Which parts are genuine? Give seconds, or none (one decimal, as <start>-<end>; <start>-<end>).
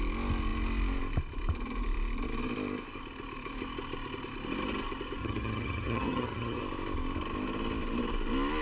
0.0-5.2; 6.6-8.6